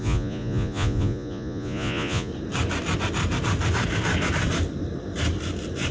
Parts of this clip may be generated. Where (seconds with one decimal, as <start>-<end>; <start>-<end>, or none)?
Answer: 0.0-2.3